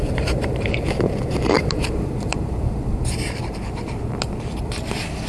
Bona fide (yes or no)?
no